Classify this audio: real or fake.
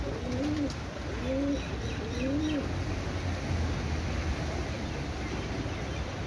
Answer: real